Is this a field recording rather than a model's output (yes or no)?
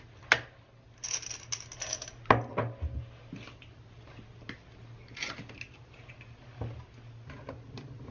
yes